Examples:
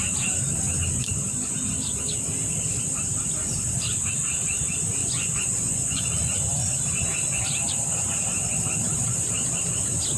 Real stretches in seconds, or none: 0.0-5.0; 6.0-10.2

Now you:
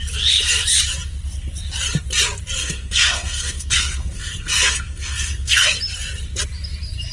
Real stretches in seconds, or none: 0.0-2.6; 5.8-7.1

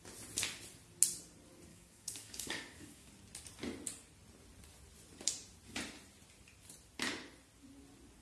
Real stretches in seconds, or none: 0.0-1.7; 3.1-8.2

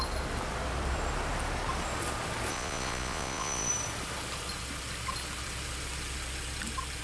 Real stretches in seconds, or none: 0.0-2.5; 3.7-7.0

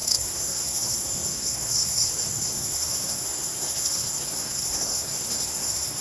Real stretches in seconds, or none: none

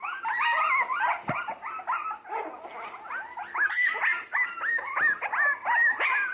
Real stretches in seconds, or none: 0.0-6.3